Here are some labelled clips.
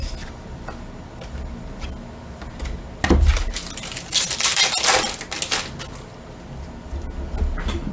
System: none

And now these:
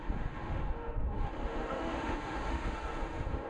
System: autoencoder, DAC-VAE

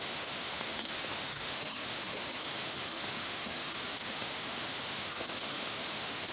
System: autoencoder, DAC-VAE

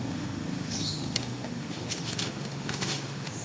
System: autoencoder, DAC-VAE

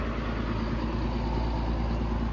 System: none